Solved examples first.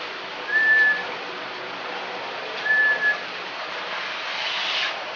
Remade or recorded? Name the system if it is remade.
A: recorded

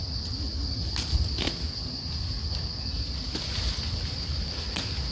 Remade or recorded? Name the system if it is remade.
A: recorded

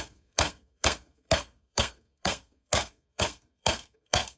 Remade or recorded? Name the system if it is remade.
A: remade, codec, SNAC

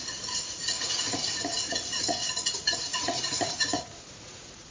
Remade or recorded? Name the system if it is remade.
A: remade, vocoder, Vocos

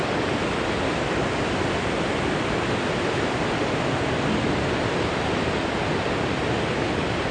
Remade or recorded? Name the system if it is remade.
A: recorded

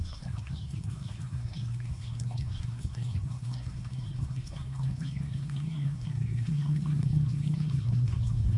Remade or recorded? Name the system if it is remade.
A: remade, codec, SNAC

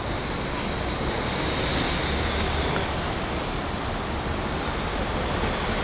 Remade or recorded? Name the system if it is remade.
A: recorded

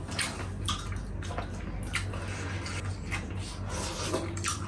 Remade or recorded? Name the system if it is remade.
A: recorded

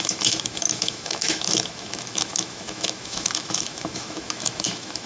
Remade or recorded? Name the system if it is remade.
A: remade, autoencoder, DAC-VAE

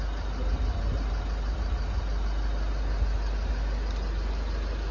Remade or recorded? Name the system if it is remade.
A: recorded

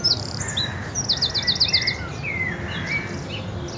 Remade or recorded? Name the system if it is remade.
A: recorded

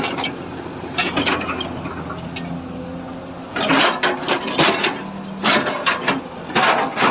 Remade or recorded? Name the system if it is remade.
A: recorded